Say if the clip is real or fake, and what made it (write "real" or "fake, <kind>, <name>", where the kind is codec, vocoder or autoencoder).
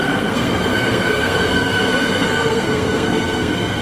fake, codec, SNAC